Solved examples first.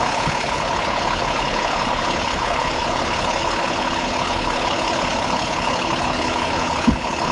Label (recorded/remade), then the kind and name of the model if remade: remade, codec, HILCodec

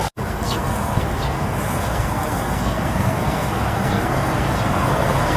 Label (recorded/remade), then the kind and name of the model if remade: remade, codec, SNAC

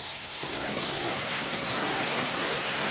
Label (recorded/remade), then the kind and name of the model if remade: remade, codec, SNAC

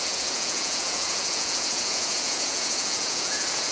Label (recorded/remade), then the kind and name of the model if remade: remade, vocoder, Vocos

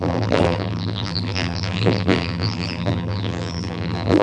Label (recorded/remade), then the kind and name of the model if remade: remade, vocoder, BigVGAN v2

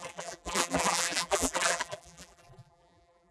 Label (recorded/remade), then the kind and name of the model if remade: remade, vocoder, BigVGAN v2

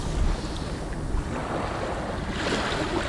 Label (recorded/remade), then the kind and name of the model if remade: recorded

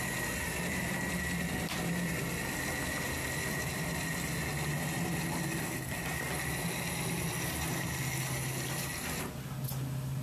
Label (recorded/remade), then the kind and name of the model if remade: recorded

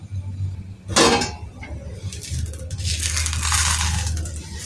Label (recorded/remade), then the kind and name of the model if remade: recorded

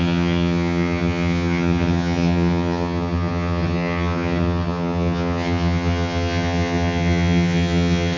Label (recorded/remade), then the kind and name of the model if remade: remade, vocoder, HiFi-GAN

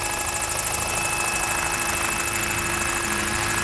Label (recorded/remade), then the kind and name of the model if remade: recorded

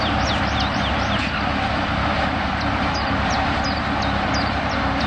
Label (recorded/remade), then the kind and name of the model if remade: remade, vocoder, BigVGAN v2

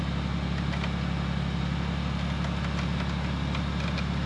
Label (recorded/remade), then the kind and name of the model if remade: recorded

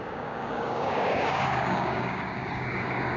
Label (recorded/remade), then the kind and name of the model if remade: remade, codec, DAC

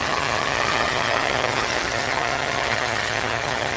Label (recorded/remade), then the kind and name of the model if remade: remade, vocoder, HiFi-GAN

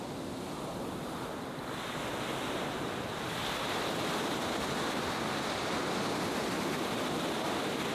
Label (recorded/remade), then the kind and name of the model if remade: recorded